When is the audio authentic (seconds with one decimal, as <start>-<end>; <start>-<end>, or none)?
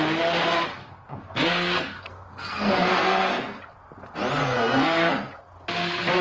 0.0-0.8; 3.6-4.4; 5.3-6.2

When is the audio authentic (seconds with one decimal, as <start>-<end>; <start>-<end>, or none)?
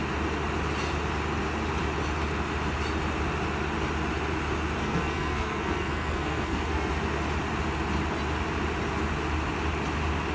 0.0-4.8; 6.9-10.3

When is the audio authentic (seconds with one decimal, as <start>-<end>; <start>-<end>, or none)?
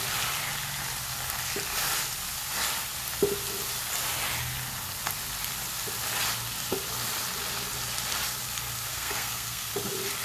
0.0-8.9; 9.7-10.2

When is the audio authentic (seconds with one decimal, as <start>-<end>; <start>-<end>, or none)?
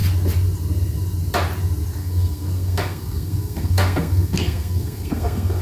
0.0-2.0